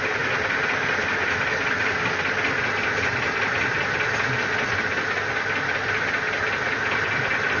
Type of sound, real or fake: real